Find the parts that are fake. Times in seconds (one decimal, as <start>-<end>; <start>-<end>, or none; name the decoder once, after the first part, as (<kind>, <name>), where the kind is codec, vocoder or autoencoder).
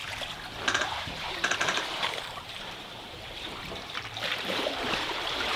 1.0-5.6 (vocoder, BigVGAN v2)